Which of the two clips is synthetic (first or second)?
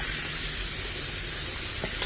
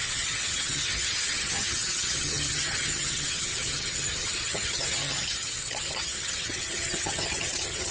second